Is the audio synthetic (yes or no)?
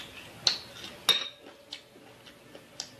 no